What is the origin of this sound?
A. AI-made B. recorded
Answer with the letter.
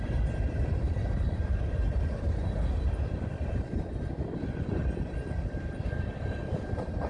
A